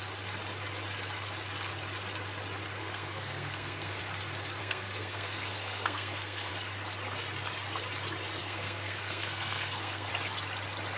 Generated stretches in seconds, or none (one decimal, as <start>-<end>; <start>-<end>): 2.8-4.0; 4.6-6.5; 8.4-10.1